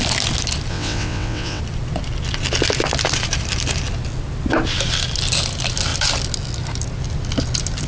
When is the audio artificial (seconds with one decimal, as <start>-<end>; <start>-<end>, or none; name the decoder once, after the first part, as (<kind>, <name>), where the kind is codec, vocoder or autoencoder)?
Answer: 0.7-1.6 (vocoder, WaveNeXt)